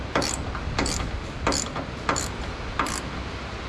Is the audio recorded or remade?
recorded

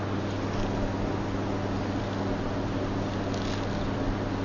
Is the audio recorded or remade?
recorded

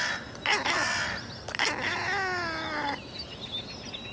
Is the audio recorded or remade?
recorded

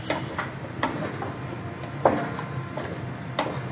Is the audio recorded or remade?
recorded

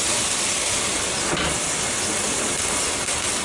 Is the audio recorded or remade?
recorded